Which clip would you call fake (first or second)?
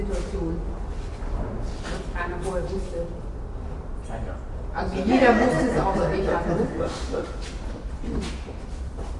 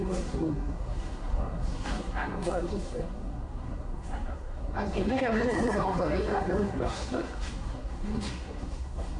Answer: second